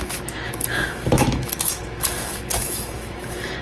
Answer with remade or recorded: remade